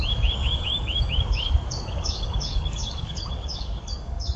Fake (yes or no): yes